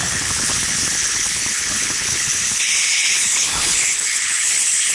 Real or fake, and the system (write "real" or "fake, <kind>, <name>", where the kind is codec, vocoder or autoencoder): fake, codec, HILCodec